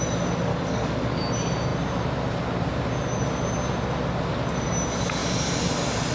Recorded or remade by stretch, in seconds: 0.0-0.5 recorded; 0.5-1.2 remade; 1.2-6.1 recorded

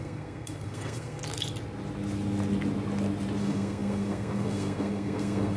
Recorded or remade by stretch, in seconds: 0.0-1.2 remade; 1.2-3.4 recorded; 3.4-5.6 remade

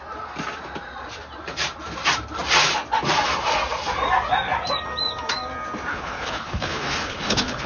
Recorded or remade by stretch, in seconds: 0.0-5.9 recorded; 5.9-7.7 remade

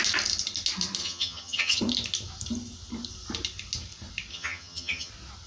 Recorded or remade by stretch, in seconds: 0.0-1.0 recorded; 1.0-1.8 remade; 1.8-4.3 recorded; 4.3-5.1 remade; 5.1-5.5 recorded

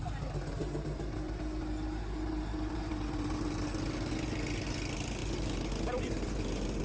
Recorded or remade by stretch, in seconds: 0.0-6.8 recorded

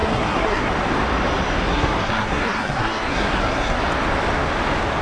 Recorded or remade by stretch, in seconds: 0.0-0.7 remade; 0.7-1.7 recorded; 1.7-3.8 remade; 3.8-5.0 recorded

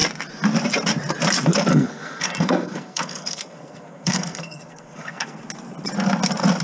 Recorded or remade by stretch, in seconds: 0.0-1.7 recorded; 1.7-5.4 remade; 5.4-6.6 recorded